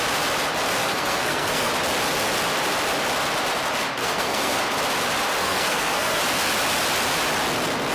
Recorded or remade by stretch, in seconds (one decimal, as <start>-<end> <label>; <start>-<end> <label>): 0.0-0.8 recorded; 0.8-1.7 remade; 1.7-4.0 recorded; 4.0-4.6 remade; 4.6-5.4 recorded; 5.4-6.2 remade; 6.2-7.9 recorded